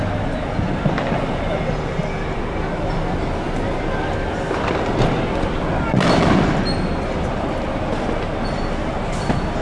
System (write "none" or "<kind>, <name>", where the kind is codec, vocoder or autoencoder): none